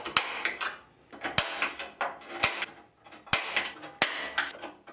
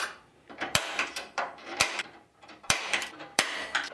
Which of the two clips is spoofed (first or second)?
second